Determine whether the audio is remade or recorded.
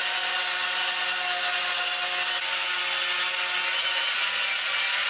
recorded